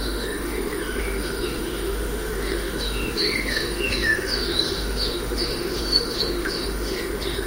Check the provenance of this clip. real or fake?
fake